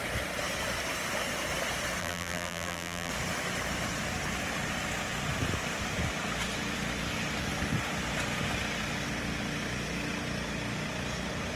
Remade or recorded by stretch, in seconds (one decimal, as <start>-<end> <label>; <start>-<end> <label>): 0.0-2.0 recorded; 2.0-3.1 remade; 3.1-11.6 recorded